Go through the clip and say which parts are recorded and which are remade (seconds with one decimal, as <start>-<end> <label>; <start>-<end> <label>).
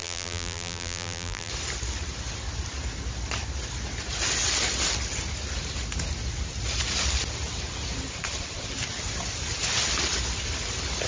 0.0-1.5 remade; 1.5-11.1 recorded